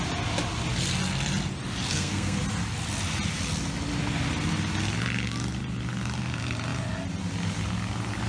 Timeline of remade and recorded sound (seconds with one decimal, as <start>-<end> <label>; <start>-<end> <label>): 0.0-1.9 recorded; 1.9-2.4 remade; 2.4-8.3 recorded